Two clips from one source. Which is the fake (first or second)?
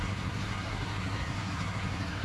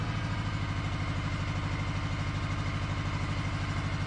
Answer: first